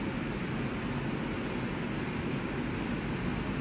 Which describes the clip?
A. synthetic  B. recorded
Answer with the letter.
B